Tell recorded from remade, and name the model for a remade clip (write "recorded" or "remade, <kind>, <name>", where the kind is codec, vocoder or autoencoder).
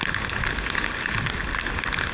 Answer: recorded